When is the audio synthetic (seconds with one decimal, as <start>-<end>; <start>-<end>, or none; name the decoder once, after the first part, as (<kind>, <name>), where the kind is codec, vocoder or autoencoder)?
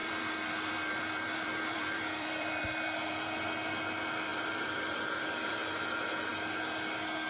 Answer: 0.0-3.4 (vocoder, BigVGAN v2); 4.3-5.6